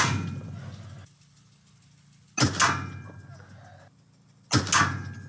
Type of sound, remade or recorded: recorded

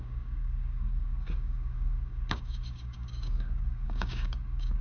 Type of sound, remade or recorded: remade